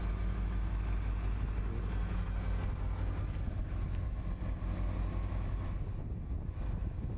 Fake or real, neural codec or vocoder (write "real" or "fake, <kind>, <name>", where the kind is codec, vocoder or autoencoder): real